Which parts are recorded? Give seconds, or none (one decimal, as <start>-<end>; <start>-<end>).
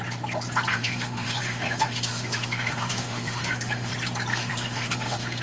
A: 0.0-0.7; 3.9-4.3